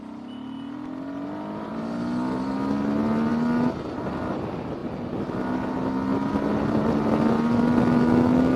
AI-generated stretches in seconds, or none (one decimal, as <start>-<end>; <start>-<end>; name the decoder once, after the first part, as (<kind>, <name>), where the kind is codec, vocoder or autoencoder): none